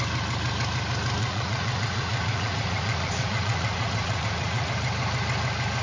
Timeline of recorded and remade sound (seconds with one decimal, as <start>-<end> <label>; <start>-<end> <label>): 0.0-1.2 recorded; 1.2-4.7 remade; 4.7-5.8 recorded